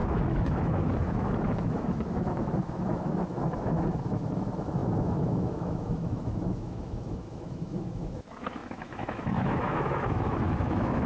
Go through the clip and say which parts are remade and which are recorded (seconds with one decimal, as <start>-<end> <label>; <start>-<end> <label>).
0.0-11.1 remade